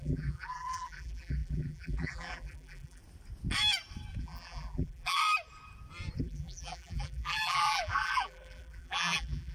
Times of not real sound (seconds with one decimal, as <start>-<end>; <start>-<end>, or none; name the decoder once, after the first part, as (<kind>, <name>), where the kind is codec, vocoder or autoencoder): 0.0-3.0 (vocoder, BigVGAN v2); 4.2-5.2; 6.2-9.5